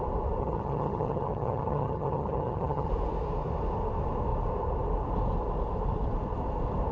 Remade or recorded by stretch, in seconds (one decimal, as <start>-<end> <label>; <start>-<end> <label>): 0.0-0.4 recorded; 0.4-2.9 remade; 2.9-6.9 recorded